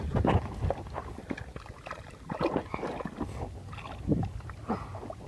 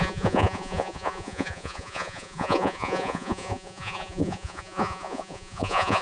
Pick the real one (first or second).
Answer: first